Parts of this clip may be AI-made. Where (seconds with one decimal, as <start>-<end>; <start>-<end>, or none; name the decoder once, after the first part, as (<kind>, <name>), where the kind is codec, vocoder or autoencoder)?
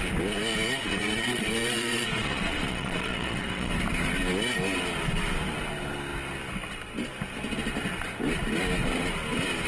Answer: 0.8-3.7 (vocoder, Vocos)